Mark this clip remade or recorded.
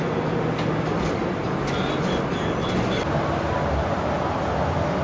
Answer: recorded